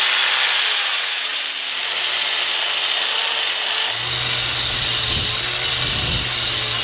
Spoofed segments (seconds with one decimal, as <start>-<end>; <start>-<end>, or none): 0.9-1.4